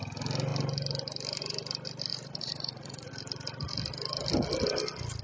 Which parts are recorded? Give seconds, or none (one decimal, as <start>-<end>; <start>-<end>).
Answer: 0.0-2.1; 3.1-5.2